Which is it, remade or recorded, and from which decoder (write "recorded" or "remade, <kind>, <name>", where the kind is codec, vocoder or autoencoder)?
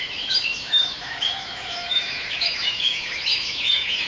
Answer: remade, autoencoder, DAC-VAE